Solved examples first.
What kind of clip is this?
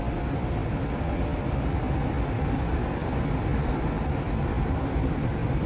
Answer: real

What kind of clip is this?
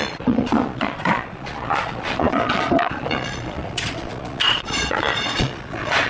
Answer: fake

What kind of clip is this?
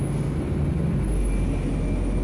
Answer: real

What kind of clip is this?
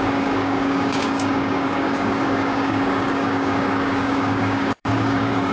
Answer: fake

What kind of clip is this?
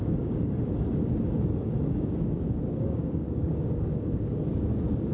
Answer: fake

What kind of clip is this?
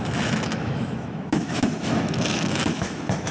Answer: fake